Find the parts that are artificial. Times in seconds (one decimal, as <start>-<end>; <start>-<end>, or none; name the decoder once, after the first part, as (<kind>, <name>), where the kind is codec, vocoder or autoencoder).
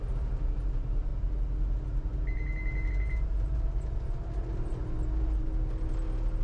0.0-1.1 (vocoder, BigVGAN v2); 2.9-4.8